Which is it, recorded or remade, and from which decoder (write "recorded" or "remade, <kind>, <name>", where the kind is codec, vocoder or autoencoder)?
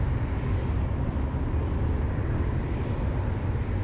remade, vocoder, BigVGAN v2